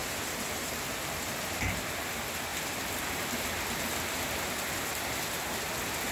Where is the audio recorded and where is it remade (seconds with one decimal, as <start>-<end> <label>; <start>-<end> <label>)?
0.0-1.9 remade; 1.9-6.1 recorded